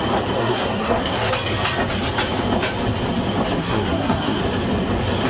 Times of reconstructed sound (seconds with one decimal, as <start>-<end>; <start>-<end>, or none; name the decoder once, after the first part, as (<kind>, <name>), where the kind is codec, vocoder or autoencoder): 0.4-1.3 (codec, SNAC); 3.6-4.4